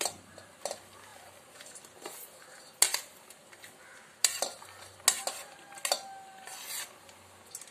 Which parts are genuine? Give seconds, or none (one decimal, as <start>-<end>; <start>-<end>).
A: 0.0-7.7